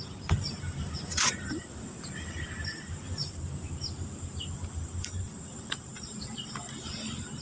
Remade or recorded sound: remade